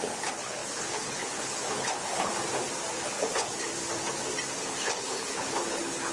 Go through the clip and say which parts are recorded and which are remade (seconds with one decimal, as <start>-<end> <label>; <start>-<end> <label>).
0.0-2.3 remade; 2.3-2.9 recorded; 2.9-3.7 remade; 3.7-4.6 recorded; 4.6-6.1 remade